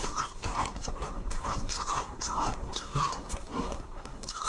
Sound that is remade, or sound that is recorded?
remade